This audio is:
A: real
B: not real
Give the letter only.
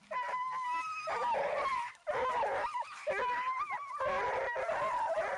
A